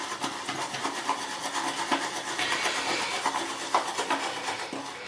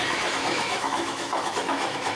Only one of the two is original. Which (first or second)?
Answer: first